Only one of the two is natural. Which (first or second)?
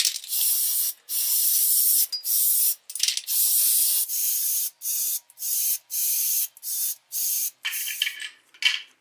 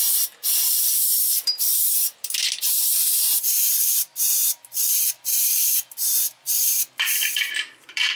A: first